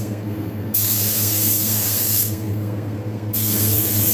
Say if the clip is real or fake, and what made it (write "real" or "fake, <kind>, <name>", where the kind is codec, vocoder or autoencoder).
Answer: fake, codec, SNAC